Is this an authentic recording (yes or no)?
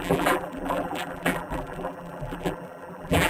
no